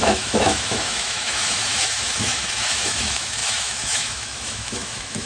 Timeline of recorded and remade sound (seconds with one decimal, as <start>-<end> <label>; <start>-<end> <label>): 0.0-5.3 remade